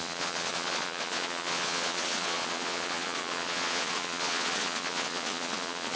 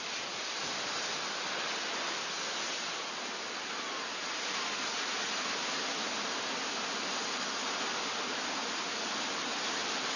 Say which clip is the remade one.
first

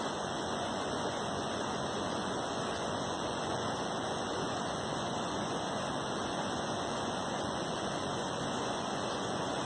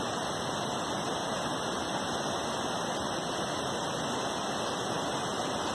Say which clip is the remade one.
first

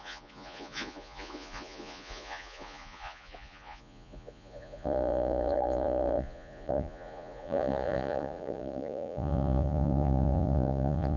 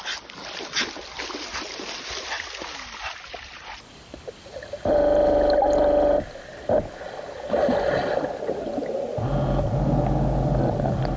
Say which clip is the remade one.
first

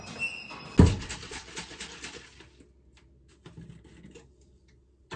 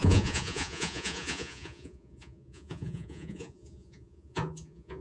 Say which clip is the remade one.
second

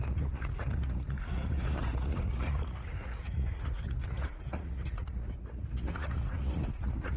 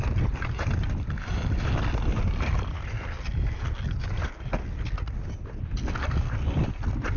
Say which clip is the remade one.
first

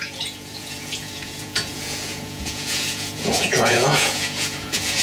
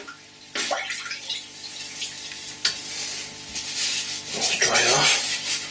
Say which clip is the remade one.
first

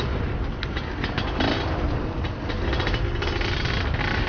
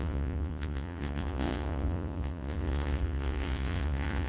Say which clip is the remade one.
second